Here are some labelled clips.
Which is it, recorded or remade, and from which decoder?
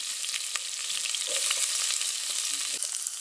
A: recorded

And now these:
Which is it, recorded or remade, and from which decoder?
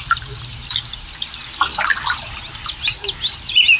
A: recorded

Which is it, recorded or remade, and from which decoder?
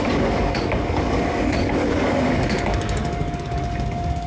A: remade, codec, DAC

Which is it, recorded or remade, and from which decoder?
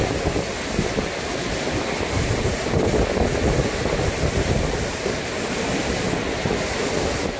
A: recorded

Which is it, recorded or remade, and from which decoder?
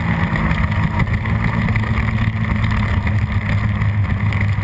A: recorded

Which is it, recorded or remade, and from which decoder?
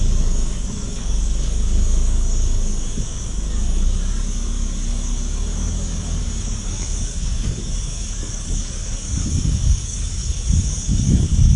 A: remade, codec, DAC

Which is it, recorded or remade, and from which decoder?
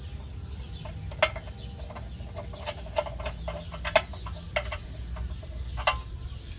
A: recorded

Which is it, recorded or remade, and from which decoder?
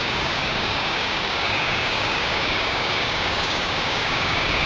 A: remade, codec, DAC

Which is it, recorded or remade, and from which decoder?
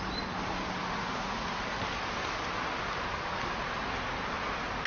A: recorded